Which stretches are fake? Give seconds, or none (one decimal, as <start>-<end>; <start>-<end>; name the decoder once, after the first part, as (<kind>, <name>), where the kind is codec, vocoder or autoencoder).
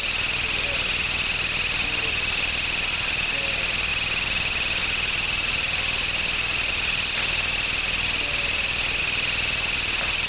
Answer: none